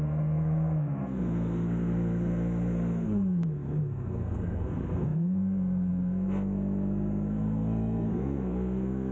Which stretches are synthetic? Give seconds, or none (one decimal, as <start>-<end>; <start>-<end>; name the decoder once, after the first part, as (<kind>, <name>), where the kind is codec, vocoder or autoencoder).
0.0-9.1 (codec, SNAC)